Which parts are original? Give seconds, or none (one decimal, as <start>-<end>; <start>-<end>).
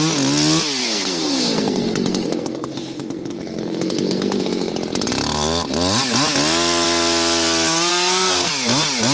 0.0-0.8; 4.7-7.9; 8.5-9.1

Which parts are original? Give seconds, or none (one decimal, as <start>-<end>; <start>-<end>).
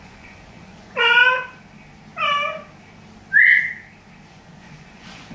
1.2-4.3